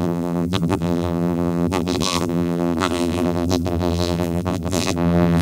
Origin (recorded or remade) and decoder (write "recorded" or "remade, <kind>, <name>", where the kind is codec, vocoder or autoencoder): remade, vocoder, BigVGAN v2